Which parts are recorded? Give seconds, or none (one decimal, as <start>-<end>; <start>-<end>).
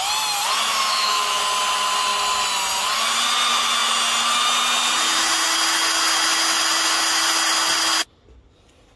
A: 0.0-0.9; 1.4-9.0